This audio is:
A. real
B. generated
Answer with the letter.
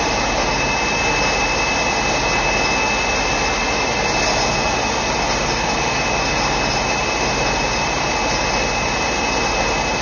A